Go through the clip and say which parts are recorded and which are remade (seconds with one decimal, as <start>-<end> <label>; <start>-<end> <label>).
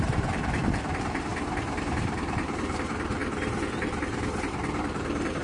0.0-1.3 remade; 1.3-1.8 recorded; 1.8-3.2 remade; 3.2-3.8 recorded; 3.8-5.4 remade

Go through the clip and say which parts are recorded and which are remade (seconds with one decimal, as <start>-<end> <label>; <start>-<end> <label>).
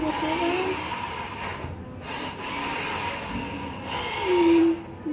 0.0-5.1 recorded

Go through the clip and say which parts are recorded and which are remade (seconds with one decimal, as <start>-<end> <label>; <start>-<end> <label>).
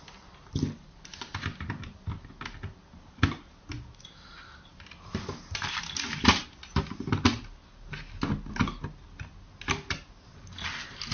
0.0-11.1 recorded